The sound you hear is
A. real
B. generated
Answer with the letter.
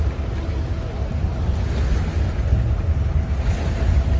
A